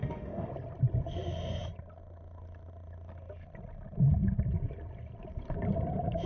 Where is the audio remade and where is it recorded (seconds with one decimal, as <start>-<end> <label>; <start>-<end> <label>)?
0.0-0.5 remade; 0.5-6.3 recorded